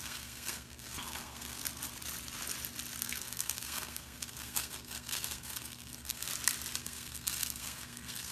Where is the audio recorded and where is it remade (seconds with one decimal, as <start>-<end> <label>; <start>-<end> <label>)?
0.0-1.6 remade; 1.6-3.0 recorded; 3.0-6.3 remade; 6.3-6.8 recorded; 6.8-8.3 remade

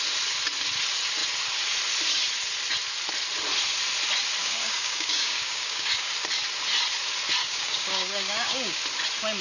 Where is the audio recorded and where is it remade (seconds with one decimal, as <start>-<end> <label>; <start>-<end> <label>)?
0.0-4.4 recorded; 4.4-6.1 remade; 6.1-7.4 recorded; 7.4-8.8 remade; 8.8-9.4 recorded

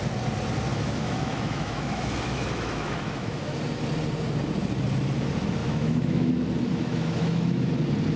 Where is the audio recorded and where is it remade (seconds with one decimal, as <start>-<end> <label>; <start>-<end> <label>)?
0.0-0.7 recorded; 0.7-3.6 remade; 3.6-5.6 recorded; 5.6-6.3 remade; 6.3-6.7 recorded; 6.7-7.7 remade; 7.7-8.2 recorded

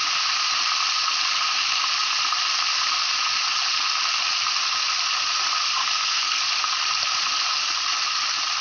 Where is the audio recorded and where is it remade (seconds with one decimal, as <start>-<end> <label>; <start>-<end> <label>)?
0.0-5.8 recorded; 5.8-6.4 remade; 6.4-8.6 recorded

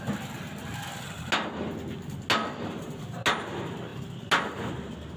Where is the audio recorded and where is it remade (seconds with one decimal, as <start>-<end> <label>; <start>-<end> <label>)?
0.0-2.4 recorded; 2.4-3.2 remade; 3.2-5.2 recorded

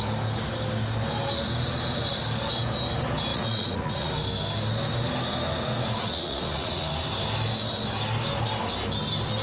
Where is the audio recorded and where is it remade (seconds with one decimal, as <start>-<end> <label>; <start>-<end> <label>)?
0.0-3.3 recorded; 3.3-4.1 remade; 4.1-6.0 recorded; 6.0-6.9 remade; 6.9-9.4 recorded